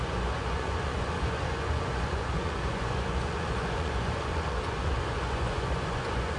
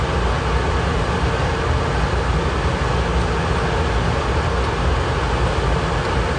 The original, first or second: second